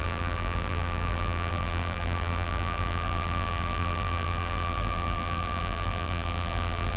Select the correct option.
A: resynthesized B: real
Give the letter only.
A